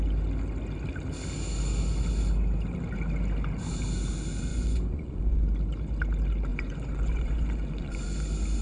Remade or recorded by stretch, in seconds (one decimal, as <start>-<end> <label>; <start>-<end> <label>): 0.0-4.5 recorded; 4.5-5.4 remade; 5.4-6.5 recorded; 6.5-8.2 remade; 8.2-8.6 recorded